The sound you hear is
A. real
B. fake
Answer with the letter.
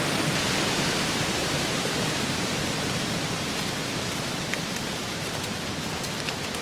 B